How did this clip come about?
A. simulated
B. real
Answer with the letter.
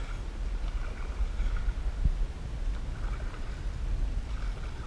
B